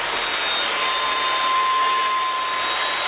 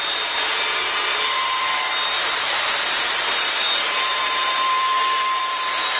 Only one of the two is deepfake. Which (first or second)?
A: second